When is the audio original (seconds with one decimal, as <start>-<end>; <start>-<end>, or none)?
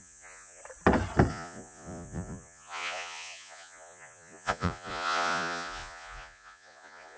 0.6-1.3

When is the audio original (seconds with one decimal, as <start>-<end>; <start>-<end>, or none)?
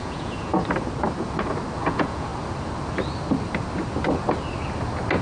0.5-1.8; 2.3-5.2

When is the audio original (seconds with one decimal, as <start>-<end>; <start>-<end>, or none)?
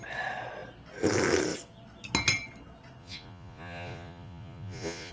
0.0-3.0